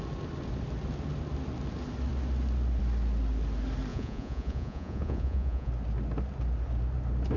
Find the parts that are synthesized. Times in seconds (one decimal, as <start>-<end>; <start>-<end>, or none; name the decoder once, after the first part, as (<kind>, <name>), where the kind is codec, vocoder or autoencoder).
3.9-5.7 (vocoder, Vocos)